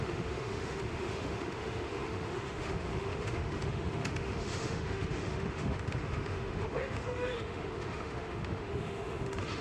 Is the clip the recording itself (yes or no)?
no